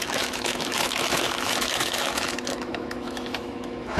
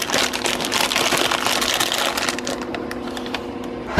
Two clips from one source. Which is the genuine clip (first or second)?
second